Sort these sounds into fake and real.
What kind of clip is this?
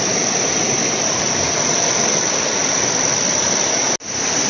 real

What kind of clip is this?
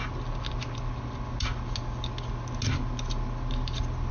real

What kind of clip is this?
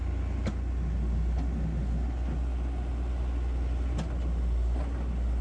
real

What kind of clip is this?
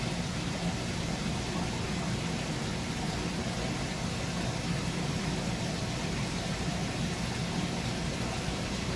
real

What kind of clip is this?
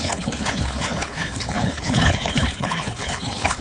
fake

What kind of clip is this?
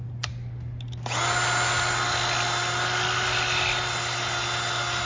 real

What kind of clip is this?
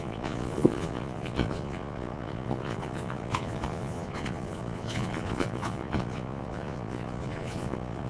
fake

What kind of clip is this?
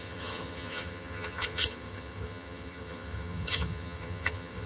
fake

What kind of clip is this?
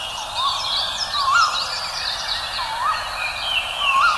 real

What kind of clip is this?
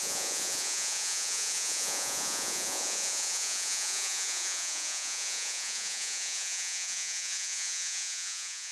fake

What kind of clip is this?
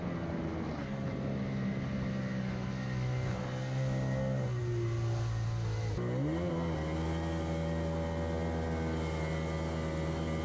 real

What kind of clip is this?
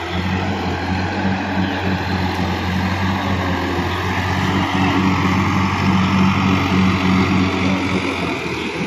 real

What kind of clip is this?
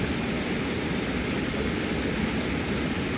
real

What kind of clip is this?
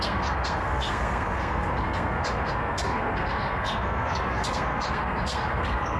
fake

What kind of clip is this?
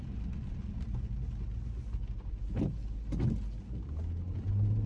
real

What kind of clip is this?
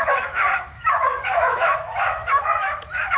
fake